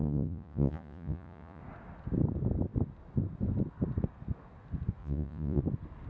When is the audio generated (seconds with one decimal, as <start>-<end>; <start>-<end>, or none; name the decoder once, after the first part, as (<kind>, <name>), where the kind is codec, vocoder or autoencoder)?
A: 0.0-1.6 (vocoder, Vocos); 5.0-5.6